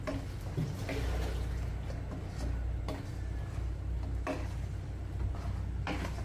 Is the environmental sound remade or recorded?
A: recorded